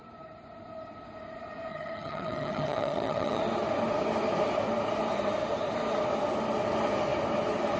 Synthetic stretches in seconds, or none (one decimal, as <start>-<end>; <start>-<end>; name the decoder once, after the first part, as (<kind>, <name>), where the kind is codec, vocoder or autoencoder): 1.7-3.4 (vocoder, HiFi-GAN)